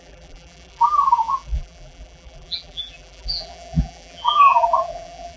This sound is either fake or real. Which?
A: fake